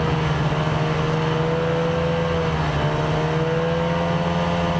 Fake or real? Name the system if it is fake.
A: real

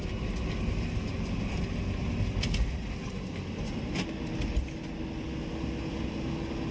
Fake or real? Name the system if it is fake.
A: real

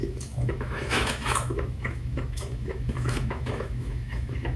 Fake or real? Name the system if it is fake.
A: fake, autoencoder, DAC-VAE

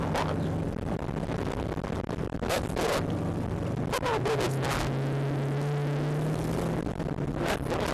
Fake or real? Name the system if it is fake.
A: real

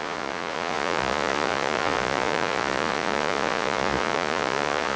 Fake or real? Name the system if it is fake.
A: fake, vocoder, Vocos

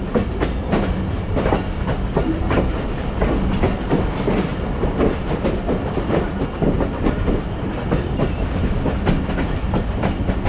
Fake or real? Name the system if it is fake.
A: real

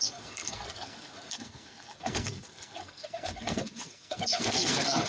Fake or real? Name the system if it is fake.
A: fake, codec, SNAC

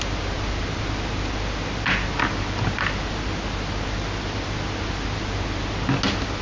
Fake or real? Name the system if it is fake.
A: real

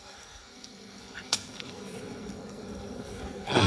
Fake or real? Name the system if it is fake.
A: fake, codec, SNAC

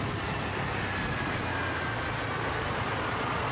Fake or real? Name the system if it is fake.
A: real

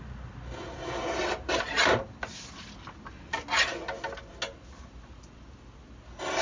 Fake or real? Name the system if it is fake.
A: real